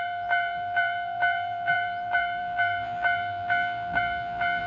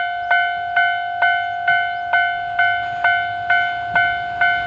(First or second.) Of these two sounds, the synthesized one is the first